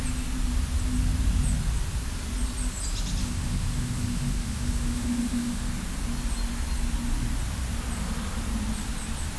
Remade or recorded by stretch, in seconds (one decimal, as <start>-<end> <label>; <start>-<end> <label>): 0.0-3.2 recorded; 3.2-5.7 remade; 5.7-9.4 recorded